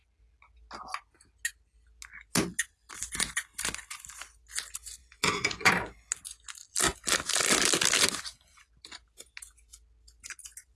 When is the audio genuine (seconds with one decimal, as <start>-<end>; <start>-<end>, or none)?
0.0-5.0; 5.7-10.8